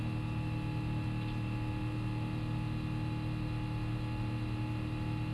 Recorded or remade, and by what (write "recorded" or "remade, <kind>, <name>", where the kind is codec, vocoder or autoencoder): recorded